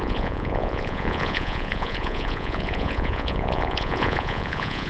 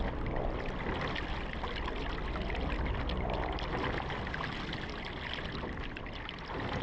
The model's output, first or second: first